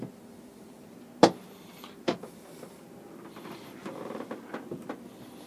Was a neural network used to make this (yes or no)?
no